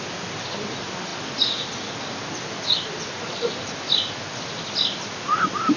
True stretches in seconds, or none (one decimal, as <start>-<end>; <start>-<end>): 0.0-5.8